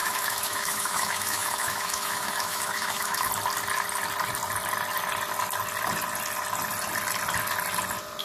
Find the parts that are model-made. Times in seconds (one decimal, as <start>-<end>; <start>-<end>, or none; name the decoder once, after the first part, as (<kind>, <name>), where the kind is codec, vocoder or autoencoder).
0.0-3.3 (autoencoder, DAC-VAE)